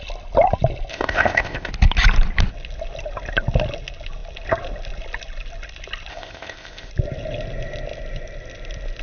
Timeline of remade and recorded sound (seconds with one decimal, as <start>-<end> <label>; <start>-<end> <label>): 0.0-0.9 recorded; 0.9-1.7 remade; 1.7-6.1 recorded; 6.1-6.9 remade; 6.9-9.0 recorded